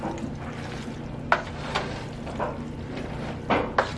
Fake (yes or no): no